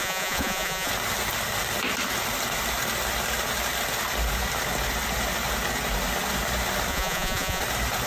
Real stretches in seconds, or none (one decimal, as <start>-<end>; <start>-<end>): 0.9-6.9; 7.6-8.1